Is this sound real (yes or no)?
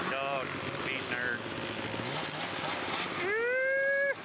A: yes